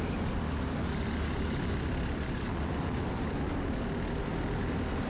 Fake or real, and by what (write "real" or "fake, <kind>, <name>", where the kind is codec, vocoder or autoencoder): real